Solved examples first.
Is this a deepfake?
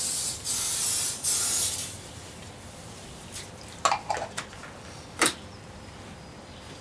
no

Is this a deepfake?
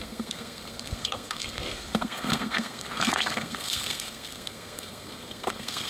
yes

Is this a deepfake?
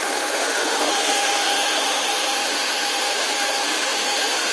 yes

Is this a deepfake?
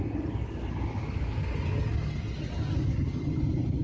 no